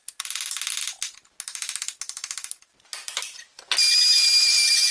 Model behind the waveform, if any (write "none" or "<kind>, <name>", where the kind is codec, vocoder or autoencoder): none